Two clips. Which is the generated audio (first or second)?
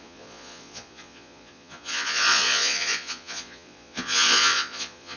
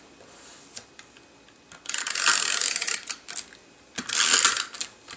first